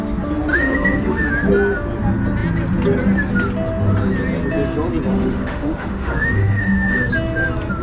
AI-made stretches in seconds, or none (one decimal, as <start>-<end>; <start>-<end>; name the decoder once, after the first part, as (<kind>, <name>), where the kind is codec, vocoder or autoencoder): 0.5-1.3 (autoencoder, DAC-VAE); 5.1-7.1